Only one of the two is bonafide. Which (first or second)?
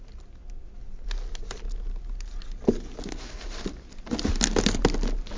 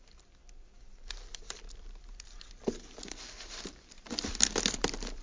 first